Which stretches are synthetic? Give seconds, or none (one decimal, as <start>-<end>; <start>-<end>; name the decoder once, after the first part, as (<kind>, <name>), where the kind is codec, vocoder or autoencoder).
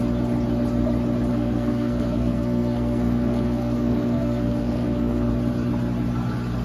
1.3-5.3 (codec, SNAC)